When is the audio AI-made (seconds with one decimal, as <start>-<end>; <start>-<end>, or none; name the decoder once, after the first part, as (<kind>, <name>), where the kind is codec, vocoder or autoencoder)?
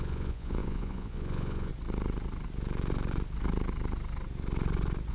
0.0-1.7 (vocoder, Vocos)